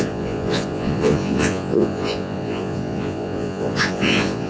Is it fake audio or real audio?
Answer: fake